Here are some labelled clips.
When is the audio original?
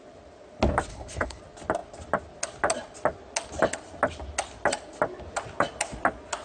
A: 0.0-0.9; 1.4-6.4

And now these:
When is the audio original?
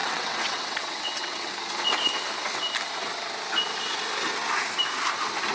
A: 1.5-5.5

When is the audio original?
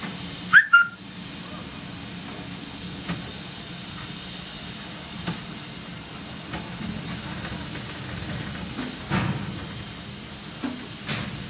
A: 0.0-11.5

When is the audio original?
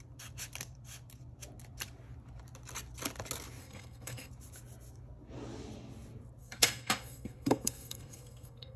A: 0.0-3.6; 4.3-6.4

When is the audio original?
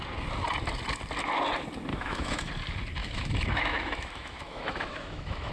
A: 0.0-1.9; 2.5-3.0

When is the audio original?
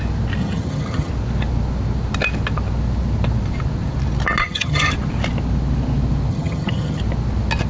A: 0.0-0.4; 1.1-4.4; 4.9-6.3; 7.0-7.7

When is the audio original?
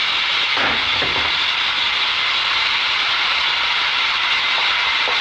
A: none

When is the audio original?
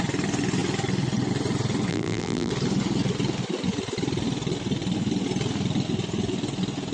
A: 0.0-1.9; 2.5-6.9